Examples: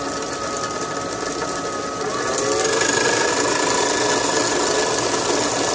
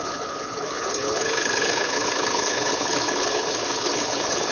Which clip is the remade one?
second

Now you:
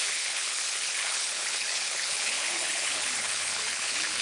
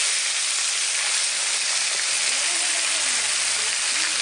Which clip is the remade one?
first